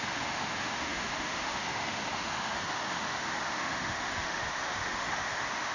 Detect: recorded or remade remade